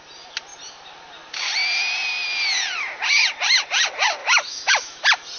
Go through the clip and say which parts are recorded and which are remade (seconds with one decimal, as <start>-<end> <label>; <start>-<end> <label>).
0.0-4.2 recorded; 4.2-5.0 remade; 5.0-5.4 recorded